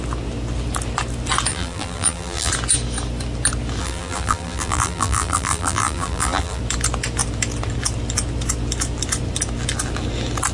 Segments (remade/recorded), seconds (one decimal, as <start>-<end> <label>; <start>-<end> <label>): 0.0-1.5 recorded; 1.5-2.5 remade; 2.5-3.8 recorded; 3.8-6.6 remade; 6.6-10.5 recorded